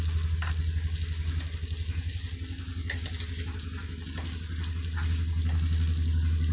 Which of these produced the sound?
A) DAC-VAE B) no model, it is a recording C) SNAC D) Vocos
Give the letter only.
B